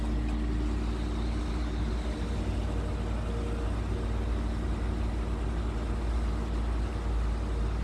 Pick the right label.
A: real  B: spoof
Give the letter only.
A